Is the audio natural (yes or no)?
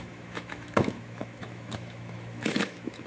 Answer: no